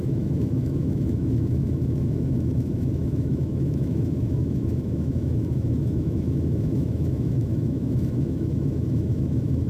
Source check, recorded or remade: remade